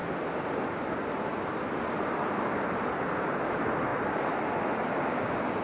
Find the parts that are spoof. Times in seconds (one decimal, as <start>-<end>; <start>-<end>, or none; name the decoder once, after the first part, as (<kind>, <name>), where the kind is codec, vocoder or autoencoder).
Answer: 0.0-3.4 (vocoder, BigVGAN v2); 3.9-5.6